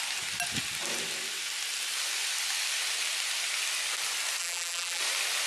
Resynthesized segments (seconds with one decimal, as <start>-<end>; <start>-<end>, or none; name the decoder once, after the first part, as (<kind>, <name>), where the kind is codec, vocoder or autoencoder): 4.4-5.0 (vocoder, BigVGAN v2)